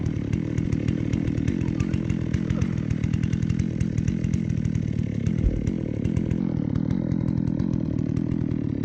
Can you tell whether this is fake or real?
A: real